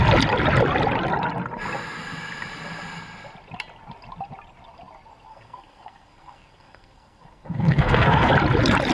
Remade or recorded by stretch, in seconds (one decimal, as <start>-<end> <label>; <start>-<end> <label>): 0.0-5.3 recorded; 5.3-8.3 remade; 8.3-8.9 recorded